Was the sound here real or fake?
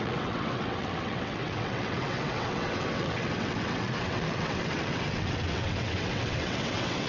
fake